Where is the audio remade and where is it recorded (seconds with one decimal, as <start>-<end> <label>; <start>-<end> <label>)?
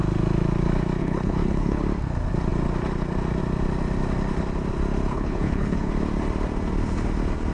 0.0-1.0 recorded; 1.0-1.8 remade; 1.8-5.1 recorded; 5.1-5.9 remade; 5.9-7.5 recorded